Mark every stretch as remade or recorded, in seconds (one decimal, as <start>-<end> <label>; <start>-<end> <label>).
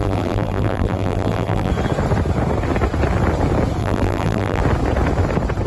0.0-1.7 remade; 1.7-3.8 recorded; 3.8-4.6 remade; 4.6-5.7 recorded